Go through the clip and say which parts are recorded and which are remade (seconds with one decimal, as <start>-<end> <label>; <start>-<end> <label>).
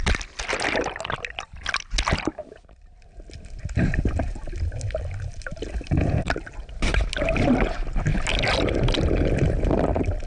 0.0-10.3 recorded